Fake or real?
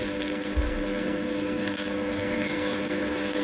fake